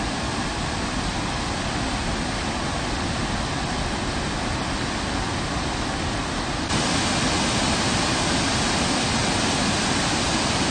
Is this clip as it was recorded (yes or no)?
yes